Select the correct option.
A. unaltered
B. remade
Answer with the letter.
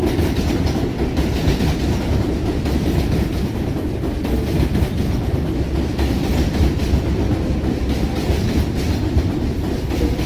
B